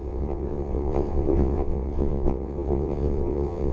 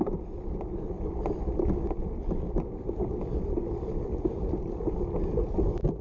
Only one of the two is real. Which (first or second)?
second